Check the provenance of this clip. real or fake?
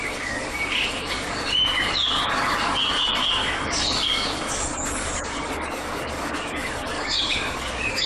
fake